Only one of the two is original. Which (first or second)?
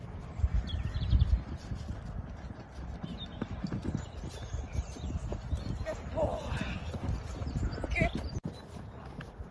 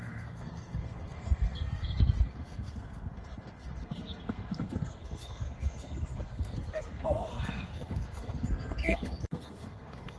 first